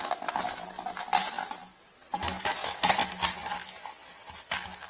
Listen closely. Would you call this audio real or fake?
real